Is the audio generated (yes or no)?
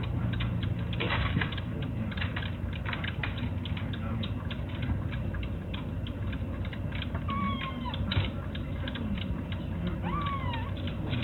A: no